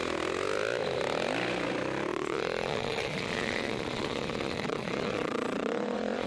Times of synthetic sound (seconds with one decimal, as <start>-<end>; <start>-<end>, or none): 2.1-6.3